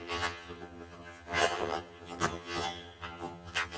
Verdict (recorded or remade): remade